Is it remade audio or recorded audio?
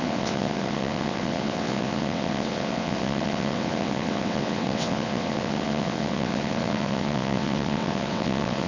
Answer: remade